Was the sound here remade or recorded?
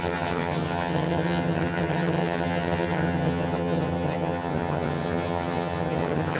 remade